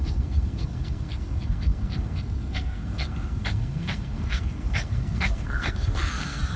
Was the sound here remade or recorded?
remade